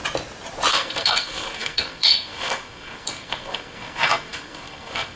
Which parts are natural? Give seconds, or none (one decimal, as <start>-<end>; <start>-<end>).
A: 0.0-0.7